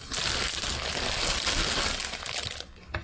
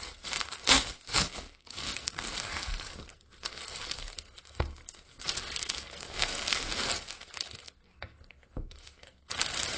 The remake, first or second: second